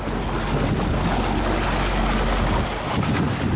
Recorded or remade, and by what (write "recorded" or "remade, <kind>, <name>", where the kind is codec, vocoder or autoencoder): recorded